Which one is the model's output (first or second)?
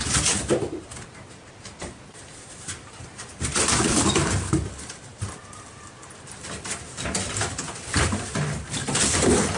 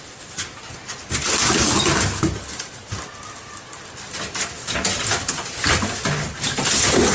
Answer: first